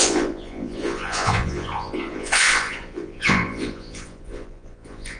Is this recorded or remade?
remade